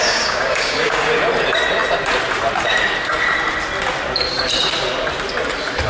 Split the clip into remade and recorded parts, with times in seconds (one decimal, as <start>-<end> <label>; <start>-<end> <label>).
0.0-1.0 remade; 1.0-5.9 recorded